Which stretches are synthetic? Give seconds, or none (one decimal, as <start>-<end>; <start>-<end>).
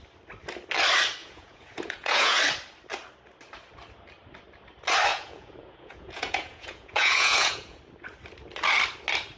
1.2-2.4; 5.1-7.8